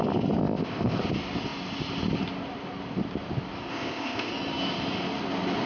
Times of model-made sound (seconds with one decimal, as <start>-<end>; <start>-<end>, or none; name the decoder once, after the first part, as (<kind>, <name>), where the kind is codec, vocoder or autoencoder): 0.4-1.0 (codec, ZipCodec); 3.7-4.3